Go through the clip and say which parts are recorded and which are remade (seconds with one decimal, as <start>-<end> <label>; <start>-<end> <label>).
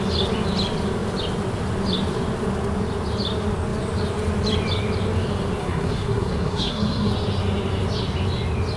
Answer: 0.0-5.6 recorded; 5.6-7.1 remade; 7.1-8.8 recorded